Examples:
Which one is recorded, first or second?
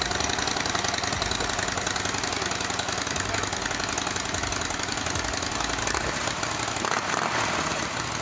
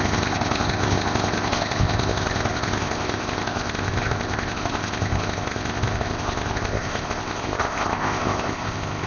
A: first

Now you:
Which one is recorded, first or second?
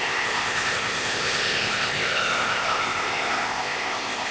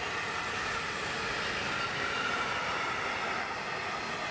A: second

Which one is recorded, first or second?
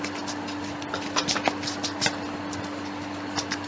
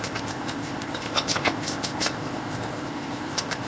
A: first